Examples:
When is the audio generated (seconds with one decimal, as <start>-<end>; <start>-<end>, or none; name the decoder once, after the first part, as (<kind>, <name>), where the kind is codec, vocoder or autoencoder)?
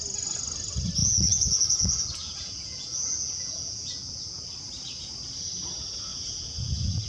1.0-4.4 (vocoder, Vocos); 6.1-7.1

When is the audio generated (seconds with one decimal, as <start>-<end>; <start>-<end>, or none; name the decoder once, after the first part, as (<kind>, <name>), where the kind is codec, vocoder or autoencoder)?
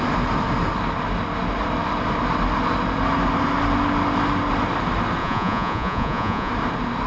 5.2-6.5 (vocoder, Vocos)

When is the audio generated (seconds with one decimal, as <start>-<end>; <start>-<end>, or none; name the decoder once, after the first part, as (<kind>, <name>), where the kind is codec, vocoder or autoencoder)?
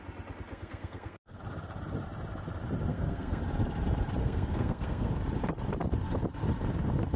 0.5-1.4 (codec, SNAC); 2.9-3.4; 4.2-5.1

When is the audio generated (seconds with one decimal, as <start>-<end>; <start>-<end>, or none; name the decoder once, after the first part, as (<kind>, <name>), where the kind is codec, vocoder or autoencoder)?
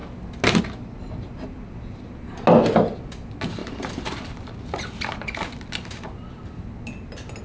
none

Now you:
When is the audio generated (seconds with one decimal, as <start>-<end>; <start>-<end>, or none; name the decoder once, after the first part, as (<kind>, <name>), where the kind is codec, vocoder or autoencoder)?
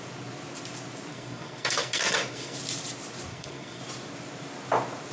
1.1-2.6 (codec, SNAC); 3.3-3.8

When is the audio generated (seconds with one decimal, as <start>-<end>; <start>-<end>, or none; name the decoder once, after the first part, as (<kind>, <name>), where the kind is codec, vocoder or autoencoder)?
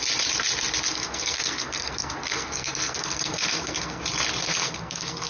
0.9-4.0 (codec, SNAC); 4.5-5.3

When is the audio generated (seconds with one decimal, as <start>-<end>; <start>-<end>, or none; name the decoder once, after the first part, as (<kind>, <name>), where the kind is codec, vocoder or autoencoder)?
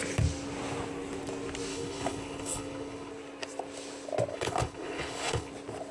1.7-3.1 (codec, HILCodec); 4.3-5.5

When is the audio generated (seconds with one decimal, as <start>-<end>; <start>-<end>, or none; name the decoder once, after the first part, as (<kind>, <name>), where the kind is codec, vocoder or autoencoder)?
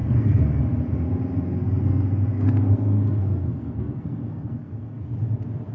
0.0-0.6 (codec, SNAC); 1.6-5.0